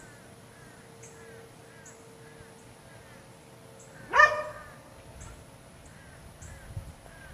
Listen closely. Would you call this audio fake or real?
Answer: real